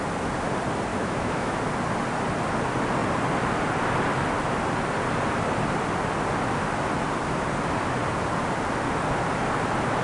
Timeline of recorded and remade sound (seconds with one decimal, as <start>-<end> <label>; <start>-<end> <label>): 0.0-0.9 recorded; 0.9-1.6 remade; 1.6-10.0 recorded